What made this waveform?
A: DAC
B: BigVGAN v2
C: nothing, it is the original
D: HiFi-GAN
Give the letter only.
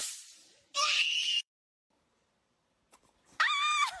B